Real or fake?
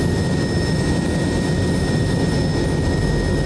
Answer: real